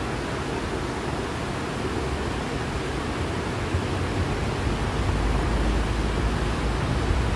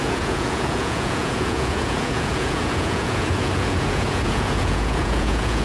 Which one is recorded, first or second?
first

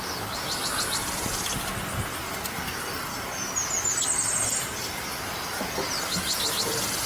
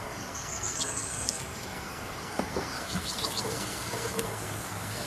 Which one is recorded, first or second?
first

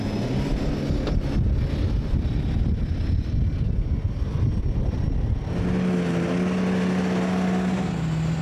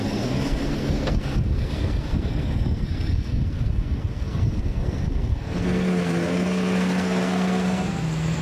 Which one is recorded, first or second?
first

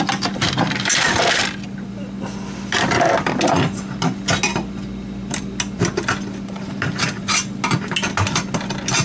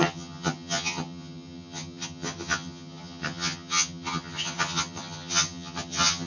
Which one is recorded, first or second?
first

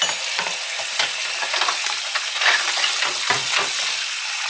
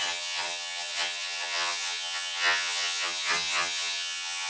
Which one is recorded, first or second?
first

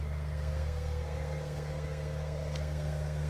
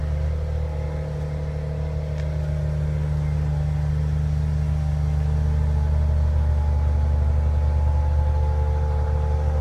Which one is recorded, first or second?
second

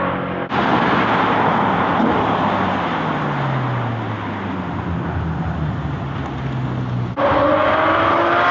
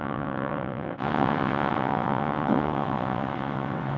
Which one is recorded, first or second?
first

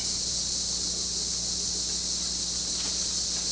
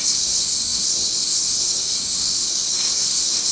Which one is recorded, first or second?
first